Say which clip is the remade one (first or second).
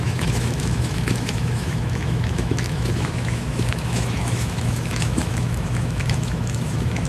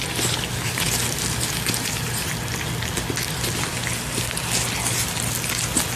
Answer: first